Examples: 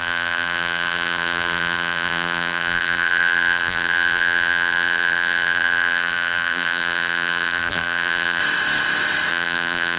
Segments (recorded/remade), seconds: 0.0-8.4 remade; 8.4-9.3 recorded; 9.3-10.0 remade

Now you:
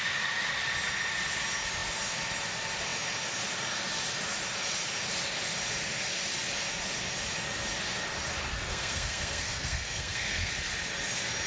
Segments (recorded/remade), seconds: 0.0-8.5 recorded; 8.5-10.5 remade; 10.5-11.5 recorded

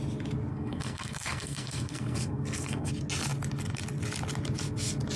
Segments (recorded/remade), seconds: 0.0-0.5 recorded; 0.5-2.9 remade; 2.9-5.2 recorded

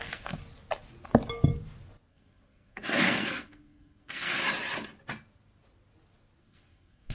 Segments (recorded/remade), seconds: 0.0-0.4 remade; 0.4-2.1 recorded; 2.1-4.4 remade; 4.4-6.4 recorded; 6.4-7.1 remade

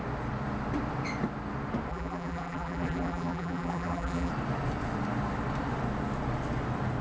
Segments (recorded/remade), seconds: 0.0-1.9 recorded; 1.9-4.3 remade; 4.3-7.0 recorded

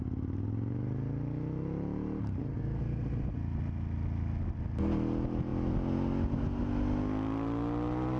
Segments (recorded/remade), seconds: 0.0-8.2 recorded